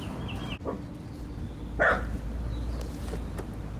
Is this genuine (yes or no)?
yes